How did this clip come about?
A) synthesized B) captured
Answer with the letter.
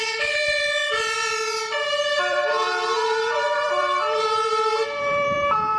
A